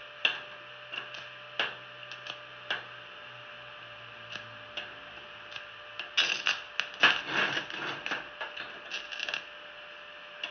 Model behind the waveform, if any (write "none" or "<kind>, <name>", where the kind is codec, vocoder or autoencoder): none